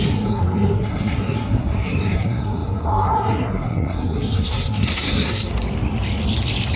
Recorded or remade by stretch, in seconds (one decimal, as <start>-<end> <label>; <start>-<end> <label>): 0.0-5.5 remade; 5.5-6.8 recorded